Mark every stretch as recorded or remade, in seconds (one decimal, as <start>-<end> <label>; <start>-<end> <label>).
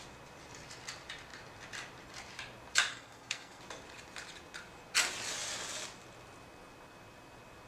0.0-2.9 recorded; 2.9-3.6 remade; 3.6-7.7 recorded